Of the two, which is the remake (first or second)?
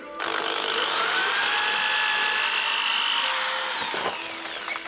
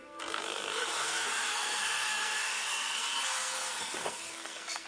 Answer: second